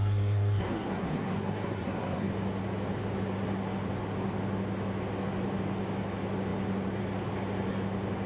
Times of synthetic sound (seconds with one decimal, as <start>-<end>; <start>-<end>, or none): 0.0-2.3